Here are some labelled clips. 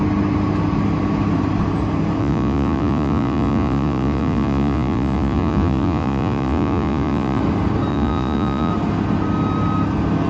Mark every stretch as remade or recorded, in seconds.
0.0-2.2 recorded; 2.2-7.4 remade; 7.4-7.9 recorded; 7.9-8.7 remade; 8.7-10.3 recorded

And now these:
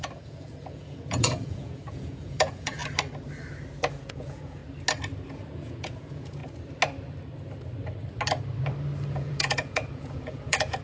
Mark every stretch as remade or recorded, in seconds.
0.0-2.8 remade; 2.8-3.9 recorded; 3.9-4.6 remade; 4.6-5.3 recorded; 5.3-6.4 remade; 6.4-9.1 recorded; 9.1-10.8 remade

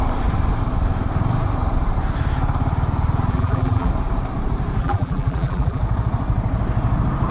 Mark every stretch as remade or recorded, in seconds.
0.0-3.3 recorded; 3.3-3.9 remade; 3.9-4.8 recorded; 4.8-5.8 remade; 5.8-7.3 recorded